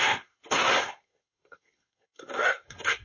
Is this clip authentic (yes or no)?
no